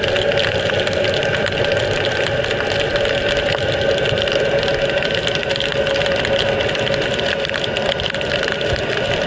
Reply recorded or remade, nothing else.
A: recorded